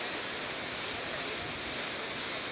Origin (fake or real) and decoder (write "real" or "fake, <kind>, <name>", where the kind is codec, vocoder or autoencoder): real